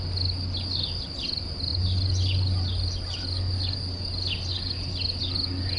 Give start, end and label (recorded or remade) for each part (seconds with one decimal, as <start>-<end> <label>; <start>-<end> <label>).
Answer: 0.0-5.8 recorded